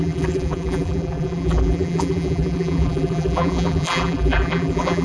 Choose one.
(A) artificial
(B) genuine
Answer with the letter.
A